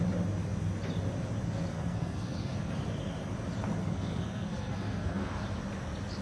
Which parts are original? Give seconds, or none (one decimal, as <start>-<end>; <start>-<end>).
0.0-1.7; 2.7-3.8; 5.3-6.2